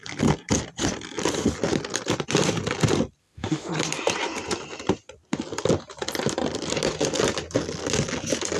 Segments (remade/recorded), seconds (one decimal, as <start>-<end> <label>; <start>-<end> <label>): 0.0-3.2 recorded; 3.2-3.7 remade; 3.7-8.6 recorded